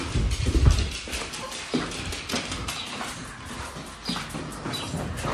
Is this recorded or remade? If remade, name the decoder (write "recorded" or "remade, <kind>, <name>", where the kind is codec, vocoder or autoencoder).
recorded